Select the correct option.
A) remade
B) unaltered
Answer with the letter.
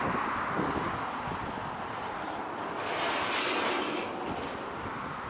B